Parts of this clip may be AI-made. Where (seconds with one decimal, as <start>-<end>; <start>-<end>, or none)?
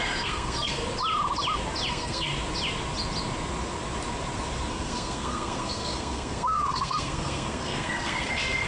0.0-0.8; 1.9-2.3; 4.7-8.7